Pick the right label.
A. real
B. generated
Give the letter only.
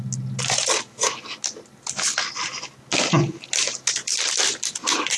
A